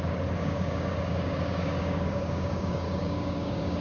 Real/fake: fake